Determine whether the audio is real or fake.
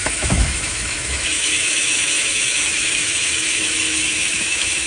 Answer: fake